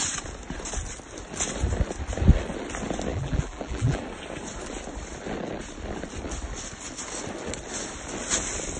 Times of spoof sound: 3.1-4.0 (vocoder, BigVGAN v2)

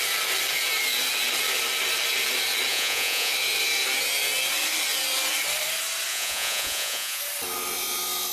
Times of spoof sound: 2.7-3.3 (vocoder, Vocos); 6.1-7.2

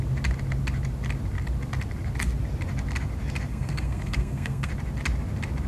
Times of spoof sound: 3.5-4.7 (codec, SNAC)

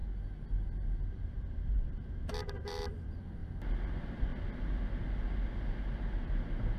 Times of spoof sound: 1.0-3.4 (vocoder, BigVGAN v2); 3.9-4.3; 6.1-6.8

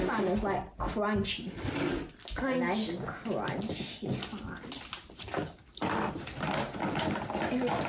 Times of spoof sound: 4.3-6.1 (vocoder, BigVGAN v2)

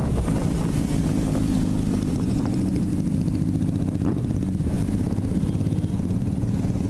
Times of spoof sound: 2.1-2.9 (vocoder, Vocos); 4.1-4.8; 5.9-6.9

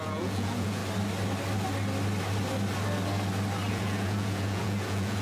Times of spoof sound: 0.0-0.8 (vocoder, Vocos); 3.7-5.2

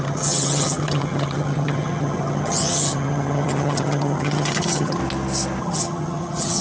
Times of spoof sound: 0.0-5.0 (vocoder, HiFi-GAN); 5.6-6.6